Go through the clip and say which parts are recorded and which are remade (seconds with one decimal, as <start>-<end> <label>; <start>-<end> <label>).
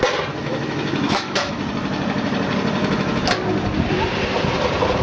0.0-0.4 recorded; 0.4-1.6 remade; 1.6-2.8 recorded; 2.8-3.3 remade; 3.3-5.0 recorded